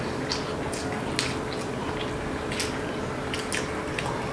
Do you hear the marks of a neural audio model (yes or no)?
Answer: no